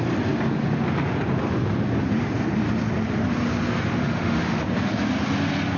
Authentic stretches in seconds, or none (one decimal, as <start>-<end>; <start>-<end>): 0.0-4.0; 4.6-5.8